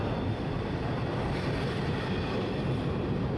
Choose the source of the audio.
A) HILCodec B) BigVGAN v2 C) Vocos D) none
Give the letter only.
B